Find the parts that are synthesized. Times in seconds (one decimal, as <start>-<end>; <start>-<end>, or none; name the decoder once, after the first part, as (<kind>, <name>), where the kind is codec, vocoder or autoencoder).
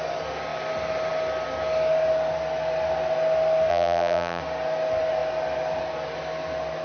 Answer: 3.7-4.4 (vocoder, BigVGAN v2)